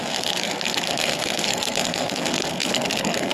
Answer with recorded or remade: remade